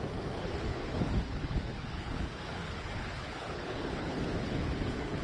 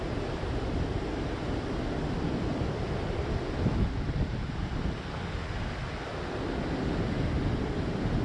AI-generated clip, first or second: first